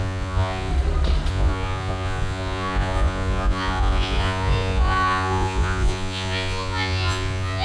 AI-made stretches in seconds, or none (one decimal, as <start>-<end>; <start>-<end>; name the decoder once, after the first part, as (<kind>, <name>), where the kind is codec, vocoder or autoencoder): 0.0-0.7 (vocoder, Vocos); 1.3-7.6